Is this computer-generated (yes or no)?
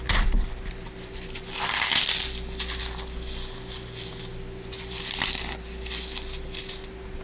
no